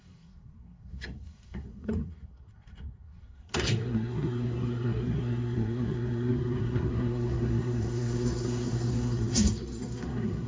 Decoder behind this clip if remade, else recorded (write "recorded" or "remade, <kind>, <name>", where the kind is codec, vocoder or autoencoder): remade, codec, SNAC